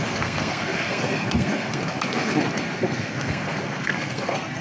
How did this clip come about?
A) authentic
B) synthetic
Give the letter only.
B